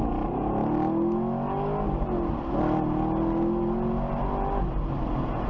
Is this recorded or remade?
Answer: recorded